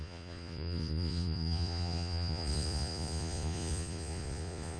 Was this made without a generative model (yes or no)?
no